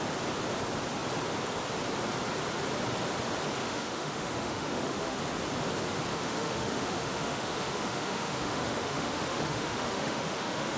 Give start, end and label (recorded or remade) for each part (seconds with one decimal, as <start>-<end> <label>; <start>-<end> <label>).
0.0-3.6 recorded; 3.6-5.2 remade; 5.2-6.1 recorded; 6.1-10.8 remade

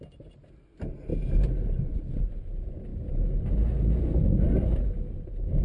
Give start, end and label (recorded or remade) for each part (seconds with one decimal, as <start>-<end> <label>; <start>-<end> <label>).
0.0-5.6 recorded

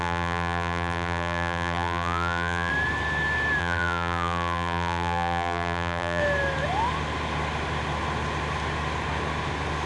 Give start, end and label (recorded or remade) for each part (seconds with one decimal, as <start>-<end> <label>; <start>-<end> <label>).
0.0-2.7 remade; 2.7-3.6 recorded; 3.6-6.2 remade; 6.2-9.9 recorded

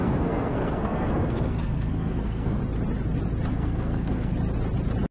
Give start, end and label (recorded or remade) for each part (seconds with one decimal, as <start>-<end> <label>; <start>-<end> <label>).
0.0-2.6 remade; 2.6-3.5 recorded; 3.5-4.3 remade; 4.3-5.1 recorded

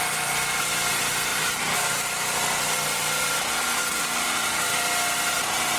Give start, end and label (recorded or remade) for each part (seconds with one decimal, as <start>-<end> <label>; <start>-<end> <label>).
0.0-4.7 remade; 4.7-5.3 recorded; 5.3-5.8 remade